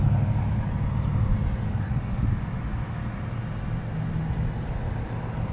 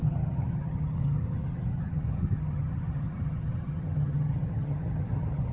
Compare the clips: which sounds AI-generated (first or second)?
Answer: second